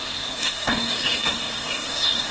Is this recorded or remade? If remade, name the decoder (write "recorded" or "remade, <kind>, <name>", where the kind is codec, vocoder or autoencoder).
remade, codec, SNAC